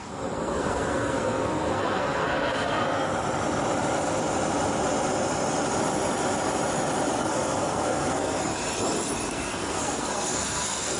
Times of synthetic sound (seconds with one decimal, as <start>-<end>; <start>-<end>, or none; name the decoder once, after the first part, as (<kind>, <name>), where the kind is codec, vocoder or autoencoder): 0.0-3.1 (codec, SNAC); 7.1-8.5; 9.3-11.0